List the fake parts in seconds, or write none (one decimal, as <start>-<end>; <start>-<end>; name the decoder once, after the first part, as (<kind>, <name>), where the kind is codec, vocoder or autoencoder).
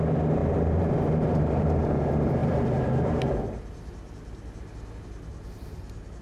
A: 0.4-1.7 (vocoder, BigVGAN v2); 2.4-3.3; 5.3-6.2